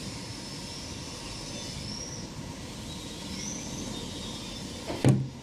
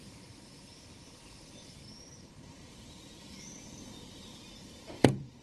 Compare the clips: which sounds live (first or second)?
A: first